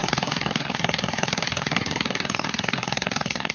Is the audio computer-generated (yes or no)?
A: yes